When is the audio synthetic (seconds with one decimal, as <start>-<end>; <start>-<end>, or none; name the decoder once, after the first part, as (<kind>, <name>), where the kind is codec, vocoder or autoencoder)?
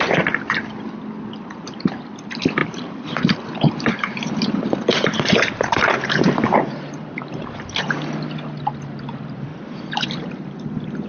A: 2.6-7.8 (vocoder, BigVGAN v2); 9.5-10.5